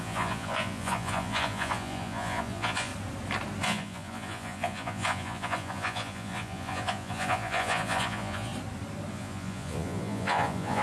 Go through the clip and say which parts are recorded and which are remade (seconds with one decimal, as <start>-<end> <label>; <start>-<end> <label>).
0.0-2.9 remade; 2.9-3.6 recorded; 3.6-8.5 remade; 8.5-9.1 recorded; 9.1-10.8 remade